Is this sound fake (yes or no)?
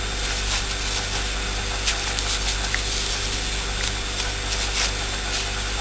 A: no